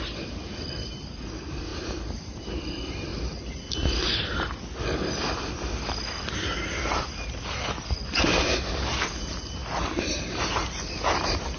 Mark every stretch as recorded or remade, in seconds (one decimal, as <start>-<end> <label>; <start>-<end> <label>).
0.0-11.6 recorded